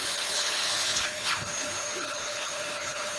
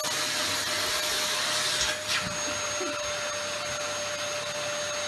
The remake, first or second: first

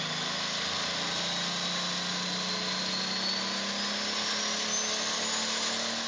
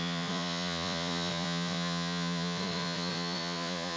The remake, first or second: second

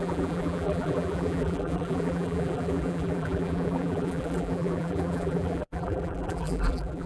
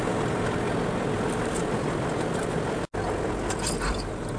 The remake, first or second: first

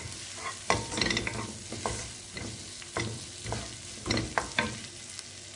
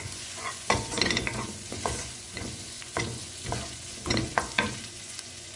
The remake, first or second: second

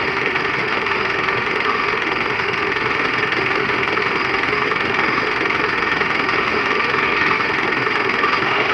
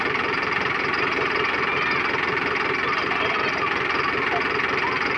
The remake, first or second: first